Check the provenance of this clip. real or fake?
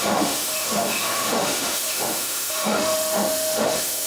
fake